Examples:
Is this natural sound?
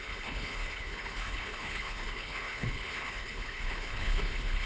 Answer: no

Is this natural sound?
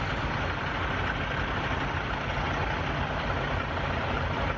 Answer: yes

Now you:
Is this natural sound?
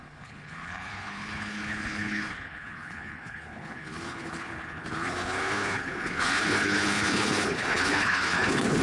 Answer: no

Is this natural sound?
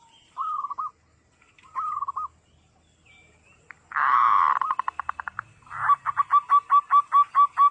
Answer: yes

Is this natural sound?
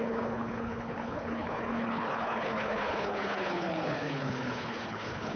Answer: no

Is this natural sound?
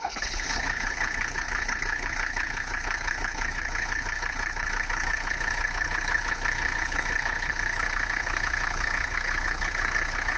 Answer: no